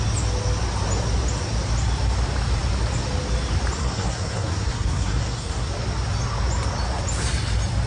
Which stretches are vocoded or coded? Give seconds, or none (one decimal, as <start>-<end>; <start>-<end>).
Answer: 3.8-5.7